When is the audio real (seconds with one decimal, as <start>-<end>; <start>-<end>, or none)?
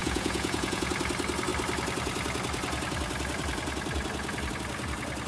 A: 0.9-5.3